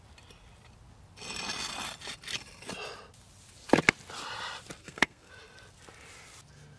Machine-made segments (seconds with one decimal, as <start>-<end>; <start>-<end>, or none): 4.8-5.3